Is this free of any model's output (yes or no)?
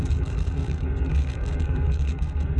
no